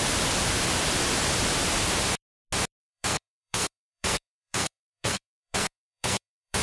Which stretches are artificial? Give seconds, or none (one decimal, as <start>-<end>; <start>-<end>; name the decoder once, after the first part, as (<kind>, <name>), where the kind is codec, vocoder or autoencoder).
2.8-6.6 (codec, SNAC)